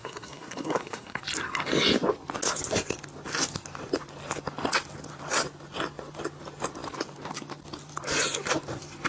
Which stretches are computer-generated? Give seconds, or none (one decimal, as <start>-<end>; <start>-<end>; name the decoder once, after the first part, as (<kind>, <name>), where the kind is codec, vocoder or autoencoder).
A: 0.0-1.2 (codec, SNAC)

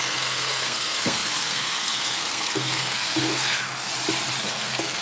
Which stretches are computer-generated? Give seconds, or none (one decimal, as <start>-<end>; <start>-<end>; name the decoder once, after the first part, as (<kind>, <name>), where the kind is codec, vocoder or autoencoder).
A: 0.0-3.9 (codec, SNAC); 4.4-5.0

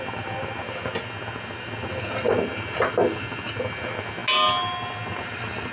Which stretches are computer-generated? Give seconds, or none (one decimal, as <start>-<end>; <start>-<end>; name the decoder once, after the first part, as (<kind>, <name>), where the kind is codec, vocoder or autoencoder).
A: none

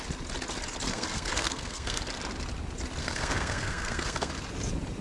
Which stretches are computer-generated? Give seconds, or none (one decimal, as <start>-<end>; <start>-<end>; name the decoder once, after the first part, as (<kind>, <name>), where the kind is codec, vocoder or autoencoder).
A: 0.9-2.0 (codec, SNAC); 3.0-4.3

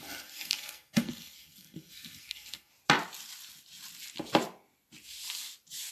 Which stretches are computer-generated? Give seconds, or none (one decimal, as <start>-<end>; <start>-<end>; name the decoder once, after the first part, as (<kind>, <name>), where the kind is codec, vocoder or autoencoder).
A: 0.0-2.7 (codec, SNAC)

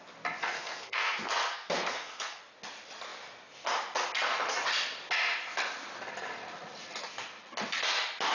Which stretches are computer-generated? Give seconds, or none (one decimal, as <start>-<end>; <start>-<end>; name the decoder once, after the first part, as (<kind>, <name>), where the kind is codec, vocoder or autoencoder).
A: 0.4-2.4 (codec, SNAC)